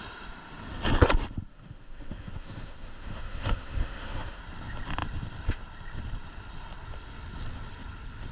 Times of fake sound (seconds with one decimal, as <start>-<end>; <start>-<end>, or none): 1.5-4.4